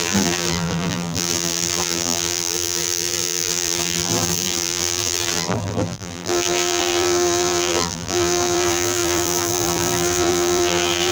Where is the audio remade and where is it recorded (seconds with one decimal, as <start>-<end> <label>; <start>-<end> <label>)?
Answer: 0.0-11.1 remade